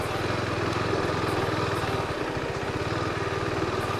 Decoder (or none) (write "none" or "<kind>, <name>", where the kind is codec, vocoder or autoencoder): none